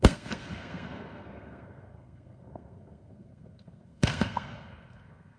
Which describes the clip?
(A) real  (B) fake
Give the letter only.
B